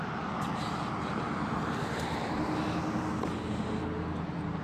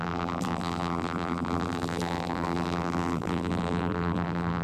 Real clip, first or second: first